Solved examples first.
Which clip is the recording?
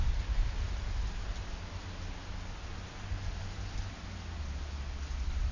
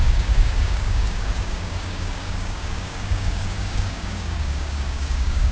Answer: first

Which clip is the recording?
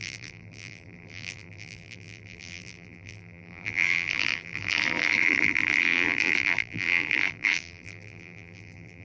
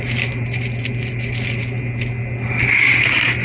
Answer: second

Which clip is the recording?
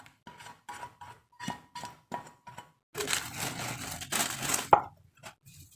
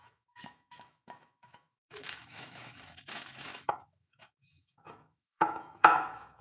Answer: first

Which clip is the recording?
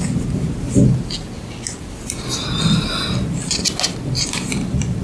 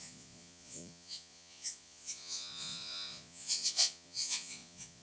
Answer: first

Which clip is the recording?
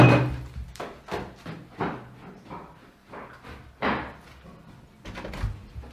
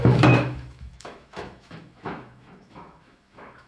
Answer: first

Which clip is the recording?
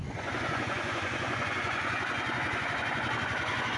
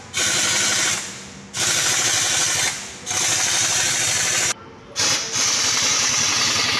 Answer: second